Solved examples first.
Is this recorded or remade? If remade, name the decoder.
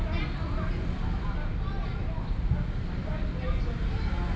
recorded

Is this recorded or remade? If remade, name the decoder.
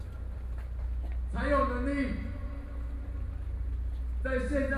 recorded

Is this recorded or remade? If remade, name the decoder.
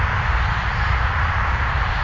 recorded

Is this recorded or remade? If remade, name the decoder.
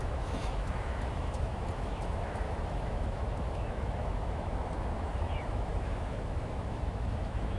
remade, autoencoder, DAC-VAE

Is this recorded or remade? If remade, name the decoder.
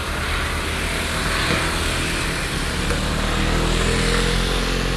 recorded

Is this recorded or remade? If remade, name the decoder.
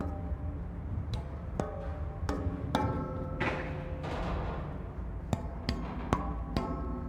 recorded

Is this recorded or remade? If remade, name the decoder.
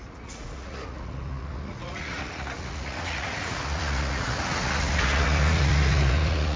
remade, vocoder, Vocos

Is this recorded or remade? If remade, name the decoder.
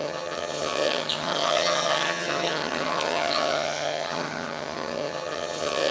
remade, vocoder, HiFi-GAN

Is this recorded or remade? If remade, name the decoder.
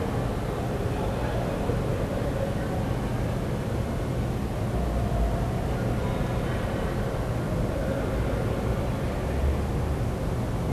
recorded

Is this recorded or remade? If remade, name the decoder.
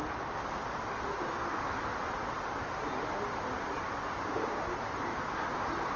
recorded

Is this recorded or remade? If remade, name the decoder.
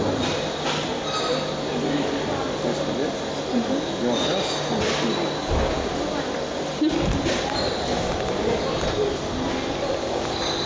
recorded